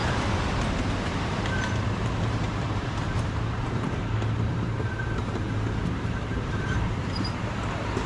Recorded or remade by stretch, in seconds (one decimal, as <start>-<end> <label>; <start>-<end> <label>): 0.0-1.0 recorded; 1.0-8.1 remade